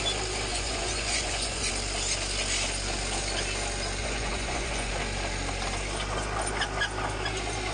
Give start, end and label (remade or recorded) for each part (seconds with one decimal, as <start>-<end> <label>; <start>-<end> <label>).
0.0-0.5 recorded; 0.5-1.7 remade; 1.7-4.0 recorded; 4.0-4.9 remade; 4.9-7.7 recorded